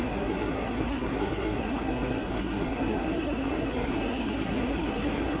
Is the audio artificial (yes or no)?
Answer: yes